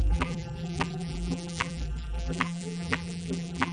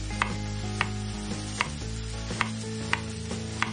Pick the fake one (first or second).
first